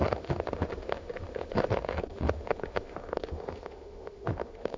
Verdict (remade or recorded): remade